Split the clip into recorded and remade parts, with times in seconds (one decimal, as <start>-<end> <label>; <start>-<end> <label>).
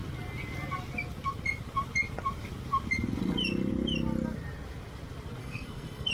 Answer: 0.0-5.4 recorded; 5.4-6.1 remade